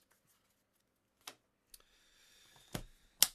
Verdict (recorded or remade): recorded